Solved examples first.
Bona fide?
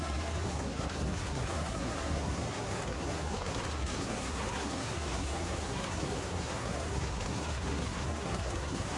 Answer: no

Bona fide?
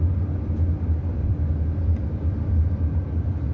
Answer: no